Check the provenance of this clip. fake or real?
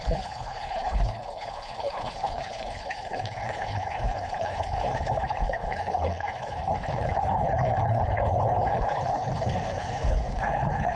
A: fake